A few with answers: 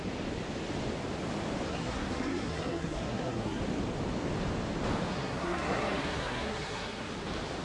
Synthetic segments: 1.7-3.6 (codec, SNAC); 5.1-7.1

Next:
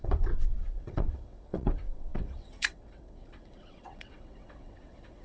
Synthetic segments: 0.0-5.2 (vocoder, WaveNeXt)

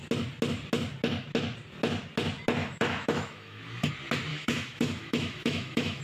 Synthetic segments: 2.6-3.9 (autoencoder, DAC-VAE); 4.3-6.0

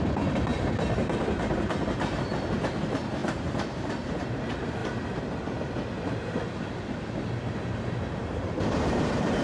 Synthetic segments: 0.0-2.3 (vocoder, BigVGAN v2); 2.8-4.8; 6.6-9.4

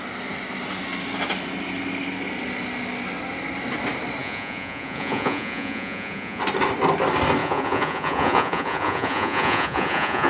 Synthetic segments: 4.2-6.4 (vocoder, Vocos); 7.4-10.3

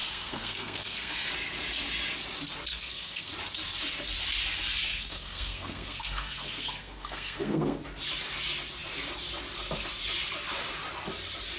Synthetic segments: 0.0-1.3 (codec, SNAC); 2.7-3.3; 4.9-7.8

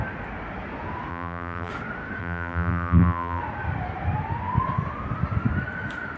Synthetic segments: 1.1-1.7 (vocoder, BigVGAN v2); 2.2-3.4